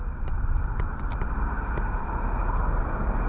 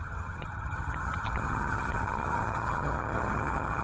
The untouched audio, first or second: first